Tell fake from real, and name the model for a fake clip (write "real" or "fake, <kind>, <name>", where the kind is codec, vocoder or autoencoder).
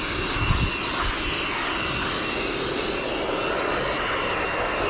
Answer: real